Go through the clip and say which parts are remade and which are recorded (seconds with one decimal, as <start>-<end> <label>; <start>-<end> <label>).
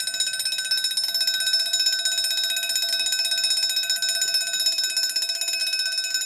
0.0-6.3 recorded